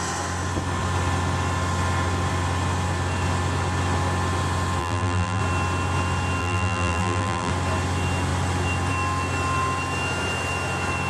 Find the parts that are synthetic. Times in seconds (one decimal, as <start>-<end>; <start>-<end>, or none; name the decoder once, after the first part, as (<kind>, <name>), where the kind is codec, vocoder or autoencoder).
4.8-5.4 (vocoder, BigVGAN v2); 6.4-7.5

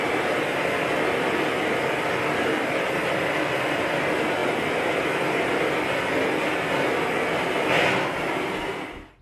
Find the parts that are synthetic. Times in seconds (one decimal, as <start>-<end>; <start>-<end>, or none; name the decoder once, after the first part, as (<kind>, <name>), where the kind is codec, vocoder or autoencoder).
4.4-6.2 (vocoder, BigVGAN v2)

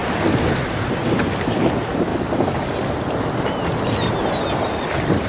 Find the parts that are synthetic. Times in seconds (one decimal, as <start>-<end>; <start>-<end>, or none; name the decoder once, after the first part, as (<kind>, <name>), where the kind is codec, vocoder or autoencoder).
0.6-2.1 (vocoder, BigVGAN v2)

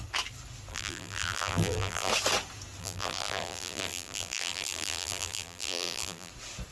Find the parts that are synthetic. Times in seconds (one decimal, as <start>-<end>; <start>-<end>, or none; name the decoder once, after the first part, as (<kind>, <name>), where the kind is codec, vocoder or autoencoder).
0.7-2.1 (vocoder, BigVGAN v2); 2.8-6.3

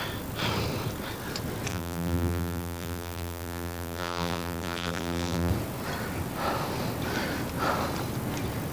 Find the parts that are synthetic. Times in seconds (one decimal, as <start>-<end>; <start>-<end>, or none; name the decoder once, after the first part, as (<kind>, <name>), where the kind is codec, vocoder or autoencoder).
1.7-5.5 (vocoder, BigVGAN v2)

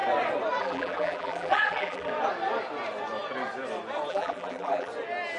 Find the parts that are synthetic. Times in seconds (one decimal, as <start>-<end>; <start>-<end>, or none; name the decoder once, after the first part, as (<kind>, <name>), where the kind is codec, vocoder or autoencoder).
0.6-2.1 (vocoder, BigVGAN v2); 4.1-4.9

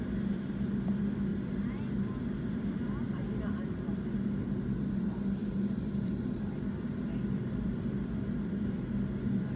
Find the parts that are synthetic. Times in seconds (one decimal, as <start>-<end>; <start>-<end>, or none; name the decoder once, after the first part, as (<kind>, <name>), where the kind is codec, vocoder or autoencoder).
0.0-1.3 (vocoder, BigVGAN v2); 2.2-9.6

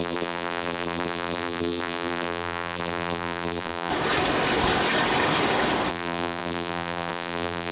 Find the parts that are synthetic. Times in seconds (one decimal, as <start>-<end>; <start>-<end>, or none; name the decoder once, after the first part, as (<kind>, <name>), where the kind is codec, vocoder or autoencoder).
0.0-3.9 (vocoder, BigVGAN v2); 5.9-7.7